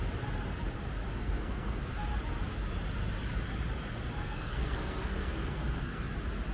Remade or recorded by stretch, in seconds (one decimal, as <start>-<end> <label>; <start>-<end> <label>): 0.0-1.2 recorded; 1.2-1.8 remade; 1.8-4.2 recorded; 4.2-6.0 remade; 6.0-6.5 recorded

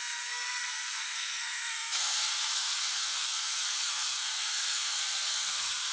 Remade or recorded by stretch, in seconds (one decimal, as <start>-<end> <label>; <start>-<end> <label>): 0.0-5.9 remade

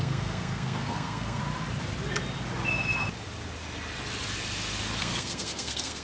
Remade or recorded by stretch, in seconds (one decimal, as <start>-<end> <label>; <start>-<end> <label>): 0.0-1.4 remade; 1.4-5.0 recorded; 5.0-6.0 remade